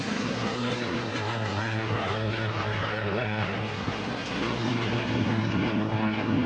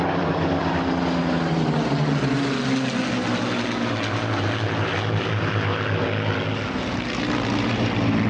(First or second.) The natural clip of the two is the second